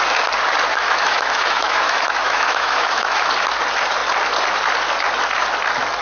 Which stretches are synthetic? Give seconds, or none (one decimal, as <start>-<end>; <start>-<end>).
0.7-3.3